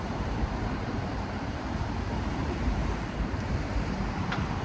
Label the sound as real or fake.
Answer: fake